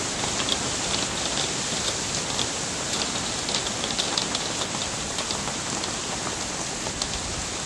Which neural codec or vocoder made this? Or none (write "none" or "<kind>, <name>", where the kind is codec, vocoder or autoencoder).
none